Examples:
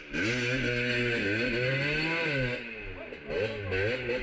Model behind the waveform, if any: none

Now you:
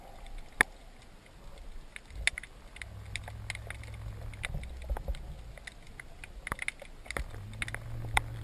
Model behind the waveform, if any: none